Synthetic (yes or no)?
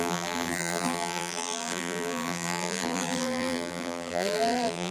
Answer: yes